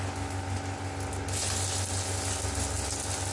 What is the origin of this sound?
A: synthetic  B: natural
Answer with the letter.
B